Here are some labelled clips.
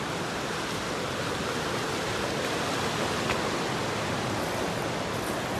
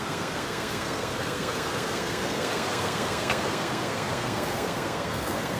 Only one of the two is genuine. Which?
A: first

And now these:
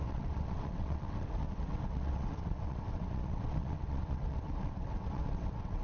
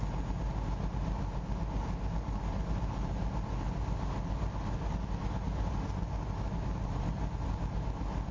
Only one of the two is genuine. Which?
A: second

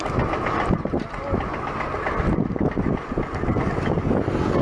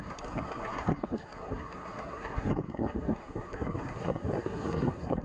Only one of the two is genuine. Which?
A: first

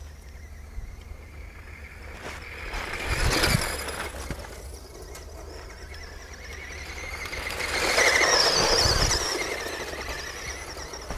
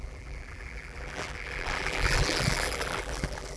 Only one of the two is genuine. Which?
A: first